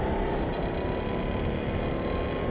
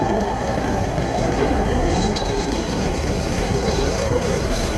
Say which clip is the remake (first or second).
second